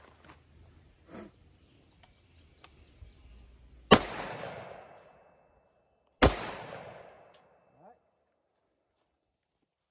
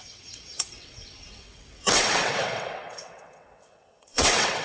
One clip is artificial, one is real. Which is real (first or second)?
first